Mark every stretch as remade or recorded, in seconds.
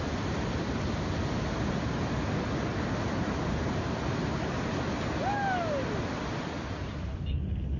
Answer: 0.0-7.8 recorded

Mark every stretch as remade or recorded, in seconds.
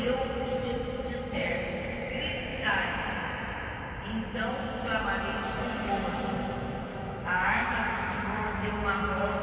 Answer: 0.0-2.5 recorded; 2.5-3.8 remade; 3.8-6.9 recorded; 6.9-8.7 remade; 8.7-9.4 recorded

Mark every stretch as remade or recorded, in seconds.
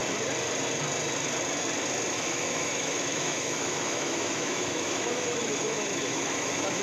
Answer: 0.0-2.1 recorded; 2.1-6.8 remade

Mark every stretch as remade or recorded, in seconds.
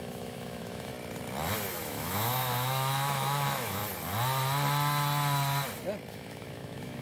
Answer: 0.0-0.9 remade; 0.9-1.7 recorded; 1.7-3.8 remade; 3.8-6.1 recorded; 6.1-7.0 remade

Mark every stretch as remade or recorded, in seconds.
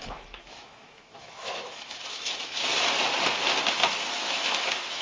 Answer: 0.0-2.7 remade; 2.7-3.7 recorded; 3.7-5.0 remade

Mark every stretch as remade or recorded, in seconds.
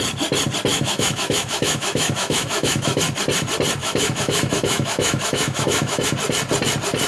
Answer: 0.0-0.7 recorded; 0.7-3.0 remade; 3.0-3.8 recorded; 3.8-6.1 remade; 6.1-7.1 recorded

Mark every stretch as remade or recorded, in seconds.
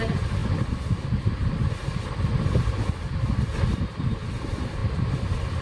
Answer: 0.0-5.6 recorded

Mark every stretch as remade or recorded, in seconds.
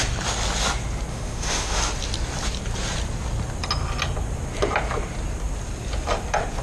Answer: 0.0-1.1 recorded; 1.1-1.8 remade; 1.8-6.6 recorded